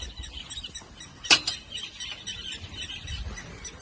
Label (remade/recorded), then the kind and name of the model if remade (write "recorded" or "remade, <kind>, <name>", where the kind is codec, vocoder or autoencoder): recorded